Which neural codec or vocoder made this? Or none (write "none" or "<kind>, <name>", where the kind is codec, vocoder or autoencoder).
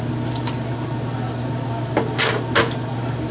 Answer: none